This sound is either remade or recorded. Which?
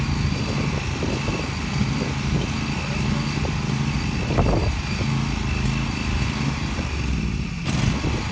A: recorded